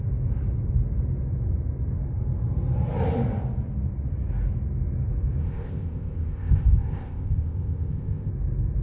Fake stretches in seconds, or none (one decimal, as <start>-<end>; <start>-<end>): 5.4-8.3